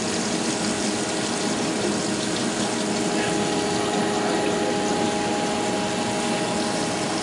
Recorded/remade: recorded